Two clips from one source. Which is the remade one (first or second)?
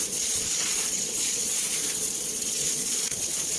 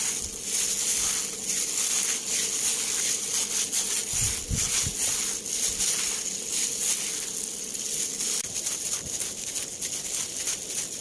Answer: first